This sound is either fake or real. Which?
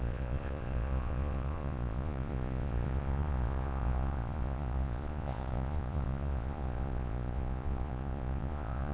fake